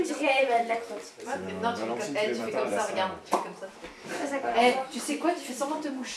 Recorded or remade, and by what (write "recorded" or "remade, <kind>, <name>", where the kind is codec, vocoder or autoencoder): remade, vocoder, BigVGAN v2